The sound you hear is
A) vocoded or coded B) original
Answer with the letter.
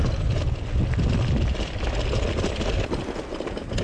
B